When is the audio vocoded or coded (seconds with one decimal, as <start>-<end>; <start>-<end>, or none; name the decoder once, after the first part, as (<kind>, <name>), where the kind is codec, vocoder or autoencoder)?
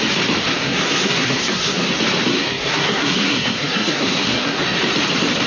0.5-1.9 (codec, SNAC); 2.3-4.6